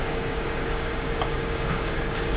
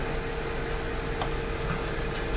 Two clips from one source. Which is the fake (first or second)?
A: first